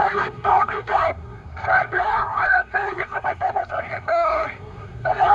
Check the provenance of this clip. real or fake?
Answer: fake